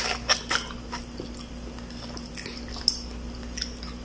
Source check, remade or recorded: recorded